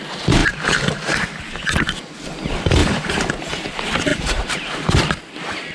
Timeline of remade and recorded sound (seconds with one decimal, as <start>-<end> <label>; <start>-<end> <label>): 0.0-0.4 recorded; 0.4-1.4 remade; 1.4-2.8 recorded; 2.8-3.3 remade; 3.3-4.1 recorded; 4.1-5.0 remade; 5.0-5.7 recorded